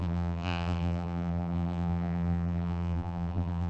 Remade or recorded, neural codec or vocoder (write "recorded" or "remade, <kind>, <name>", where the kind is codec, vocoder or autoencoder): remade, vocoder, BigVGAN v2